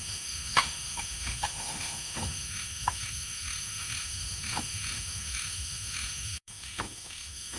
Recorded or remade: remade